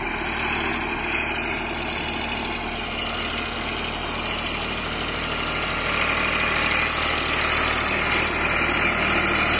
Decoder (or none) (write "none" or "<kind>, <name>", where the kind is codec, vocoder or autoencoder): none